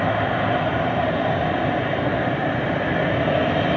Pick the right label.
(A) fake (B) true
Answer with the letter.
B